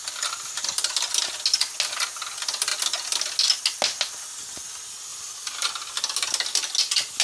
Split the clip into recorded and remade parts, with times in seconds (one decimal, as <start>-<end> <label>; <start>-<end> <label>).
0.0-7.2 recorded